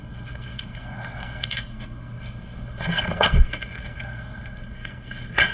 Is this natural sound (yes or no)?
no